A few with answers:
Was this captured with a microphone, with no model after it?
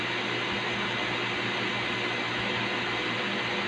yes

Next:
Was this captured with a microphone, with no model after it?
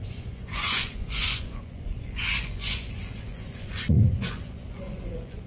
no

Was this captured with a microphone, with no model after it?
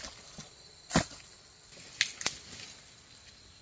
yes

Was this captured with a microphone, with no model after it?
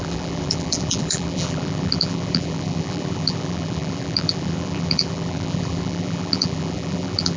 no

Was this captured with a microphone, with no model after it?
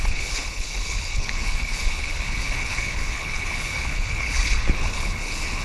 no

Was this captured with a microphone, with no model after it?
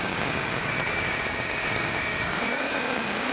no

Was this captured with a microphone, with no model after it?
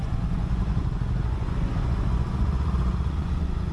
no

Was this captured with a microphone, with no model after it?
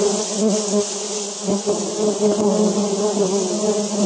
yes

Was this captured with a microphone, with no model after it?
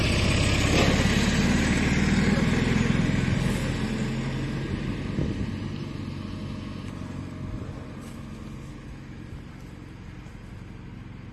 yes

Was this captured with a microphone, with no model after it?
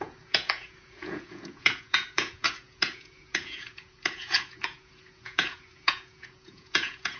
no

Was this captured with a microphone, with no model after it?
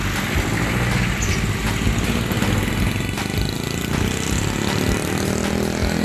yes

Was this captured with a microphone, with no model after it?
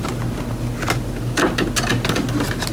yes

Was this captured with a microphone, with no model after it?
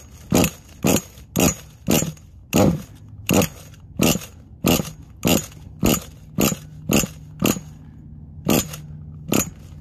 yes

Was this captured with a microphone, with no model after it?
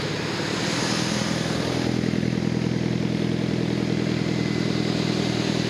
yes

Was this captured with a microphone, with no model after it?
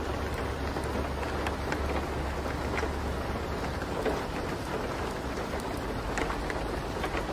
yes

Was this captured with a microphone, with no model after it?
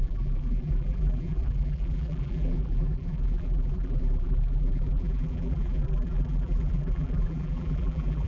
no